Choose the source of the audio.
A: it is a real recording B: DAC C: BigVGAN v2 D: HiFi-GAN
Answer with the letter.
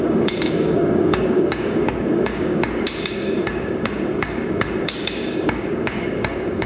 B